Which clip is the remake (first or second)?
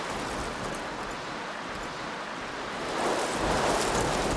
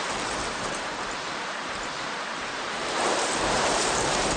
second